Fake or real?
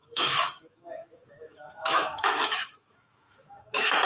fake